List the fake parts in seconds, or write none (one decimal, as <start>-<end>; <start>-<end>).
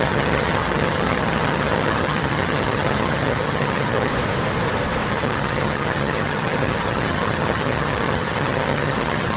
0.0-4.1; 5.1-9.4